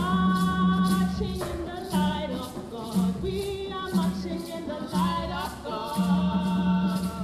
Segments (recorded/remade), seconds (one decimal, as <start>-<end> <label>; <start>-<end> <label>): 0.0-1.1 recorded; 1.1-3.4 remade; 3.4-7.2 recorded

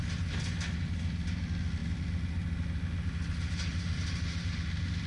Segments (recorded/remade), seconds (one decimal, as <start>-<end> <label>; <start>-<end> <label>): 0.0-5.1 recorded